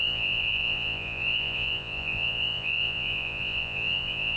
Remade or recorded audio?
remade